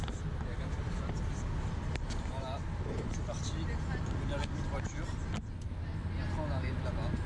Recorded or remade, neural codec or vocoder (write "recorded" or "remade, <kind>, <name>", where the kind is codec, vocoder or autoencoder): recorded